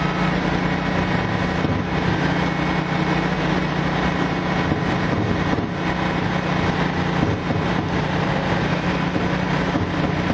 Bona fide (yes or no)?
yes